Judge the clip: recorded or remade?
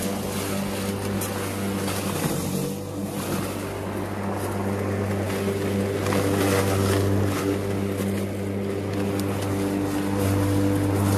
recorded